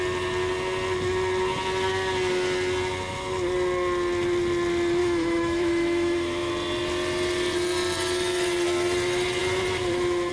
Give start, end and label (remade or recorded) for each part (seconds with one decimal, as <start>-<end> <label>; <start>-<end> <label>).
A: 0.0-5.0 recorded; 5.0-6.5 remade; 6.5-10.3 recorded